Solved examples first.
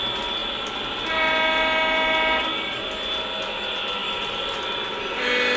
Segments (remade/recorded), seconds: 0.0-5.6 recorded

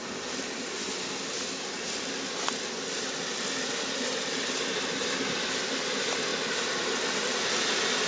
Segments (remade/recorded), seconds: 0.0-8.1 recorded